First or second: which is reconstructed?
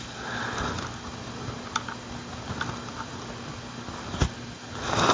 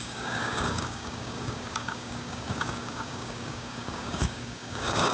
second